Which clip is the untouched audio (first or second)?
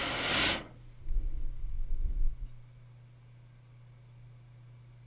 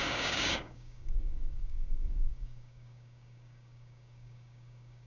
first